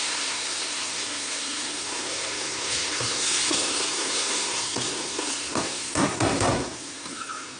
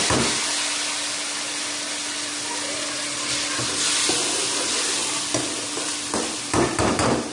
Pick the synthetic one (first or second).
first